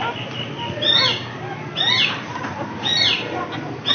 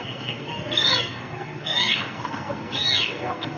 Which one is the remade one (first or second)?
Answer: second